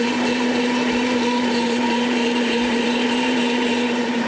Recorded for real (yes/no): no